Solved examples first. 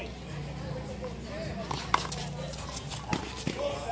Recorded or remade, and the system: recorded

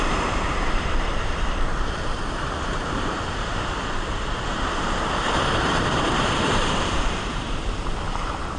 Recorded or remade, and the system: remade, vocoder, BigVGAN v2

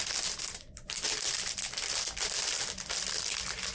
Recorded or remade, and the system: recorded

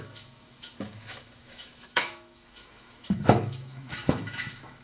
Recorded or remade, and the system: remade, autoencoder, DAC-VAE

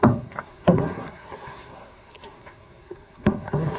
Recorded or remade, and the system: remade, codec, SNAC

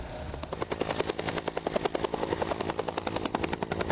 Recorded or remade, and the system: recorded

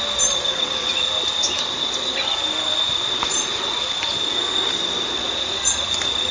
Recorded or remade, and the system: recorded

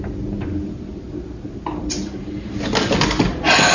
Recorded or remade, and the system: recorded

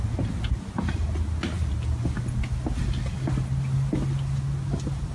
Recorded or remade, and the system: recorded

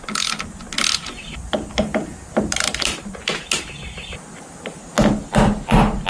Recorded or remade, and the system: recorded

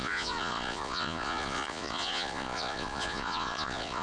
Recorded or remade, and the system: remade, vocoder, Vocos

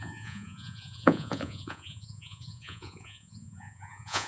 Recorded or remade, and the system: remade, vocoder, Vocos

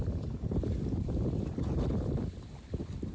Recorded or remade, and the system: recorded